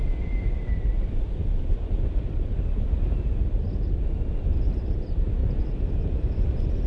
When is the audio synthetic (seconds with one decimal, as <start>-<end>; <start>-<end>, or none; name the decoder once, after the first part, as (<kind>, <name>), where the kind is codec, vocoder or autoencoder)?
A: 0.0-1.4 (vocoder, BigVGAN v2); 4.2-5.4; 6.2-6.9